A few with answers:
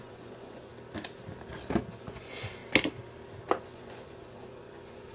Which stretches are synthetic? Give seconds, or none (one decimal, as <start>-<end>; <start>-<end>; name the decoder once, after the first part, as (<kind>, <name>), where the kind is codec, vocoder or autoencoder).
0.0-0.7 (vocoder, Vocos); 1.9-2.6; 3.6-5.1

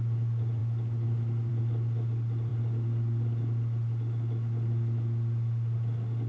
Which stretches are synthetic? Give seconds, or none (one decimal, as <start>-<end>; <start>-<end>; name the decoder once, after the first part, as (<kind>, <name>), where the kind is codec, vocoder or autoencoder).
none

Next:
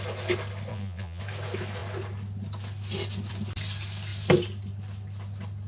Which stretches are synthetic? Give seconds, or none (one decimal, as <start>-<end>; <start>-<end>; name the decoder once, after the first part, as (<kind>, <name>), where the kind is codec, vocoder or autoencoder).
0.7-1.2 (vocoder, Vocos)

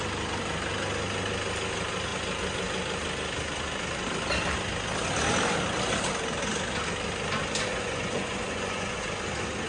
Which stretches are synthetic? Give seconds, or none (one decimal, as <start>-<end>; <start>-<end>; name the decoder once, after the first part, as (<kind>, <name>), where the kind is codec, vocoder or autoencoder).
7.7-9.0 (vocoder, Vocos)

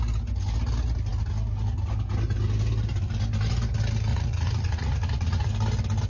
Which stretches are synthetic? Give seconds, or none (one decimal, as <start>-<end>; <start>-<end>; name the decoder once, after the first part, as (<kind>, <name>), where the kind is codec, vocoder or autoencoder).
4.1-5.5 (vocoder, Vocos)